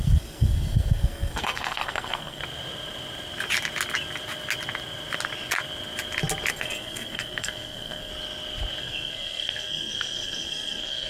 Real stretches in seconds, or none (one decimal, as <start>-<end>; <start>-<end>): 2.4-6.5; 8.1-8.8